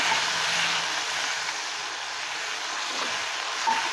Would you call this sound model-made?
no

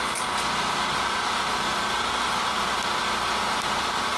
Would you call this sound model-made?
no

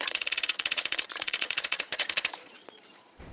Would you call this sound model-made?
yes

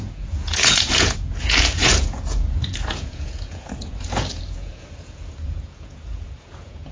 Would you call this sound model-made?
yes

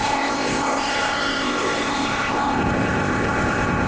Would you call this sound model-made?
yes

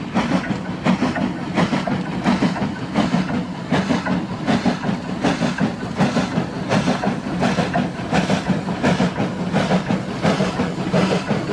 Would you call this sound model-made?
no